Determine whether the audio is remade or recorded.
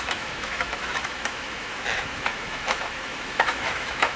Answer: remade